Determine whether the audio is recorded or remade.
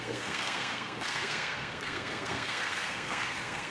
remade